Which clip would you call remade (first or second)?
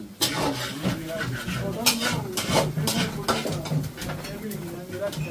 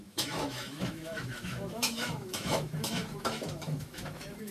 second